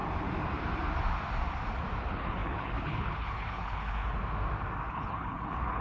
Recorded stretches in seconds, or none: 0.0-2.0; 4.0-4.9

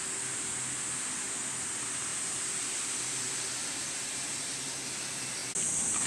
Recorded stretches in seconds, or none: 0.0-2.1; 2.6-3.6; 4.3-6.1

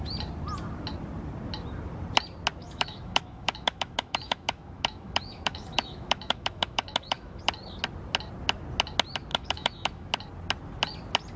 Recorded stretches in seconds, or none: 0.0-2.6; 7.4-9.3; 10.1-11.4

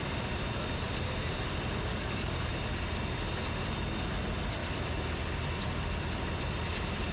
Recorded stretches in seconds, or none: 0.0-1.9; 2.5-7.1